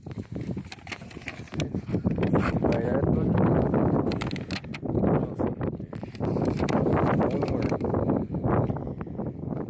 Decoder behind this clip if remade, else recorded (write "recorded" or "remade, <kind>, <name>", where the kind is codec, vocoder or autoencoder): recorded